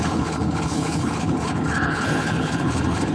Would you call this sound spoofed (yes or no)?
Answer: yes